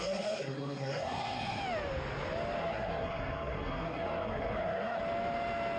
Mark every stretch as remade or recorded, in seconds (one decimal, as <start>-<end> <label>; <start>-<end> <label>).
0.0-1.6 remade; 1.6-2.6 recorded; 2.6-5.0 remade; 5.0-5.8 recorded

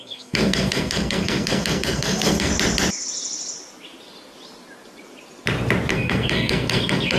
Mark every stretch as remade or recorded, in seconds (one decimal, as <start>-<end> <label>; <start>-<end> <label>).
0.0-2.5 remade; 2.5-5.9 recorded; 5.9-7.2 remade

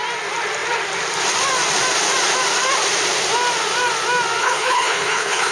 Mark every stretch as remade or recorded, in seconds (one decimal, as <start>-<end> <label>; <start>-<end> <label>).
0.0-4.4 recorded; 4.4-5.5 remade

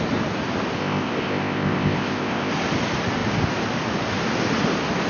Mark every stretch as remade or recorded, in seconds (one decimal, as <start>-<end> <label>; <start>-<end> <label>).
0.0-0.8 recorded; 0.8-2.5 remade; 2.5-5.1 recorded

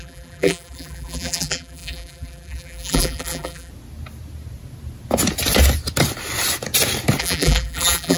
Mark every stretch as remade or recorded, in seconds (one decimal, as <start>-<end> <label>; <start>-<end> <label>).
0.0-3.7 remade; 3.7-7.2 recorded; 7.2-8.2 remade